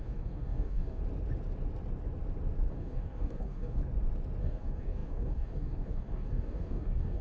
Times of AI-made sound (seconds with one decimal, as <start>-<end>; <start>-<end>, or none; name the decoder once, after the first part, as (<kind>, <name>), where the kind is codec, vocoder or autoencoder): 0.0-1.0 (codec, DAC); 2.7-3.8; 4.4-7.2